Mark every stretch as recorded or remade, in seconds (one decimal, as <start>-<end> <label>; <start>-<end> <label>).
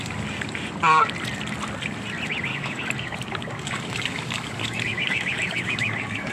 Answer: 0.0-2.5 recorded; 2.5-6.3 remade